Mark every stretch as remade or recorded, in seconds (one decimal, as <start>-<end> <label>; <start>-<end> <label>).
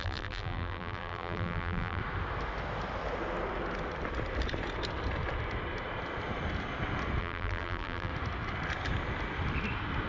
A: 0.0-2.0 remade; 2.0-7.2 recorded; 7.2-8.1 remade; 8.1-10.1 recorded